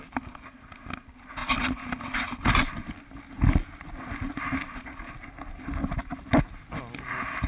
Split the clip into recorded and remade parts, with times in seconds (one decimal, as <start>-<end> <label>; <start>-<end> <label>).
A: 0.0-7.5 recorded

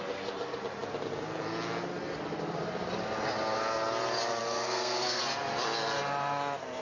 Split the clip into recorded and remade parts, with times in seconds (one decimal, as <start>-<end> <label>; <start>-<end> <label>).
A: 0.0-4.4 recorded; 4.4-5.2 remade; 5.2-6.8 recorded

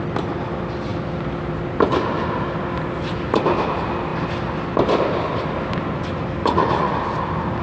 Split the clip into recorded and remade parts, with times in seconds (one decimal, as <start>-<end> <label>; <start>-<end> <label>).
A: 0.0-6.4 recorded; 6.4-7.0 remade; 7.0-7.6 recorded